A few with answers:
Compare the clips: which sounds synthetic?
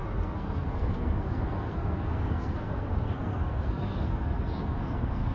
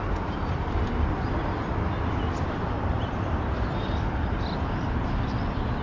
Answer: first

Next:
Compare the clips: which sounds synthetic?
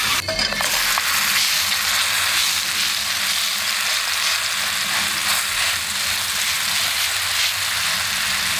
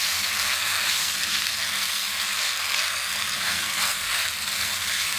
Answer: second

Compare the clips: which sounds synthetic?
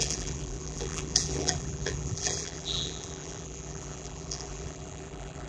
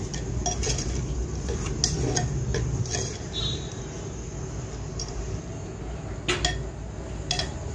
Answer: first